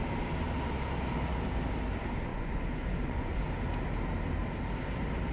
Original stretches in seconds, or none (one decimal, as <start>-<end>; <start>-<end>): 0.0-2.3; 3.4-5.3